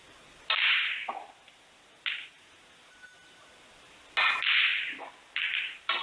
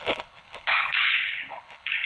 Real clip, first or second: first